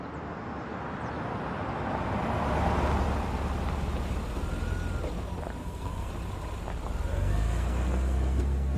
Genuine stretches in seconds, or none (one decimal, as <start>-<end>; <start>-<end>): 0.0-5.6; 6.1-7.1